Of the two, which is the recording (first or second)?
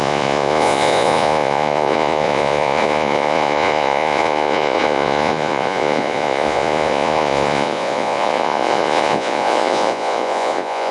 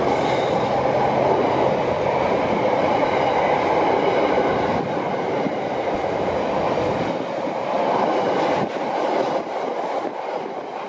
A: second